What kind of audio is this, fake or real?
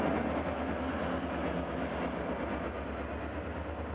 real